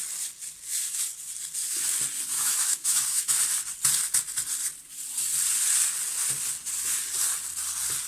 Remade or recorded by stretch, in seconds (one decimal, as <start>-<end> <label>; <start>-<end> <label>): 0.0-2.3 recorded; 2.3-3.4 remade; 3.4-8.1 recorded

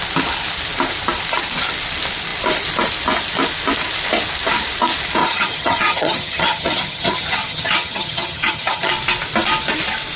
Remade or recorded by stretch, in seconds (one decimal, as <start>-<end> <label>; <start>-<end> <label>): 0.0-5.2 recorded; 5.2-8.9 remade; 8.9-10.2 recorded

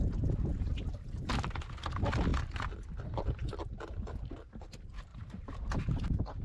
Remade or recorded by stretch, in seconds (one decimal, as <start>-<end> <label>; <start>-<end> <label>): 0.0-0.5 recorded; 0.5-1.3 remade; 1.3-5.1 recorded; 5.1-6.4 remade

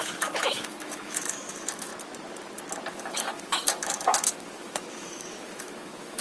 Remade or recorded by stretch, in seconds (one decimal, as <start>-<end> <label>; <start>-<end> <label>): 0.0-1.9 remade; 1.9-2.9 recorded; 2.9-6.2 remade

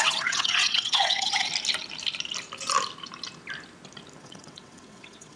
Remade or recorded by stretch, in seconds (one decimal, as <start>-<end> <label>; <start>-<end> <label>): 0.0-1.5 remade; 1.5-4.2 recorded; 4.2-5.4 remade